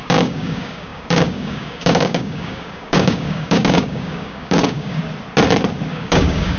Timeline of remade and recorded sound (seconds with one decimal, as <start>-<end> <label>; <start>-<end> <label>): 0.0-5.0 remade; 5.0-5.9 recorded; 5.9-6.6 remade